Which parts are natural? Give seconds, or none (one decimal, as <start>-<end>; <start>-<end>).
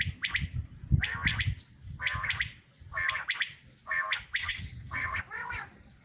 0.0-4.4; 5.2-6.0